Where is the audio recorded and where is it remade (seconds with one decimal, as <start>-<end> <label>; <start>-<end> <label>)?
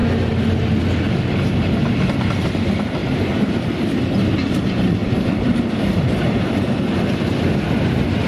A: 0.0-3.0 recorded; 3.0-3.6 remade; 3.6-8.3 recorded